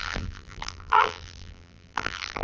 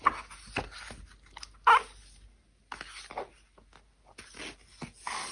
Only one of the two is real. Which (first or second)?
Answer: second